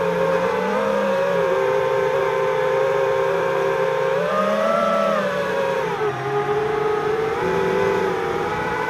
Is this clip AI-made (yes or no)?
yes